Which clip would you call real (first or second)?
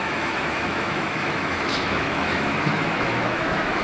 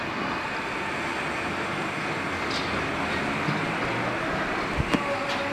second